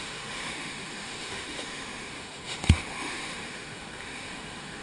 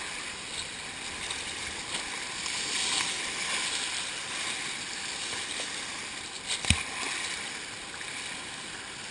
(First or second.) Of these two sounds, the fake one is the first